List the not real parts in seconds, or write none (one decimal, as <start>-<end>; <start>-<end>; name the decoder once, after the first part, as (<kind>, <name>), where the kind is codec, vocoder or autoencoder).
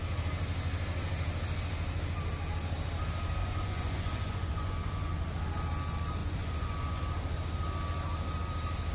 3.4-5.1 (vocoder, Vocos); 6.2-7.0